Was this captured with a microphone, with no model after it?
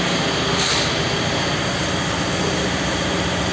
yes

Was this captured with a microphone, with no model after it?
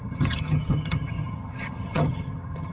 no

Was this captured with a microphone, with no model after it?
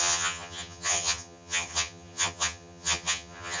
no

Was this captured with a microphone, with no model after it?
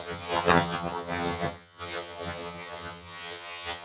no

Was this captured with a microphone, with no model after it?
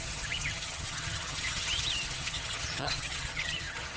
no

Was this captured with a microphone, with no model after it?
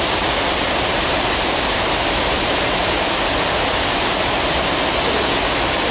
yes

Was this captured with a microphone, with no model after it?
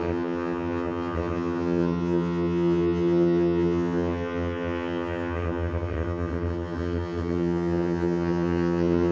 no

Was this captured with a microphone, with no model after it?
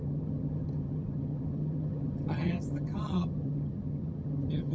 no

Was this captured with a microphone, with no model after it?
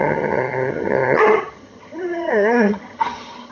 no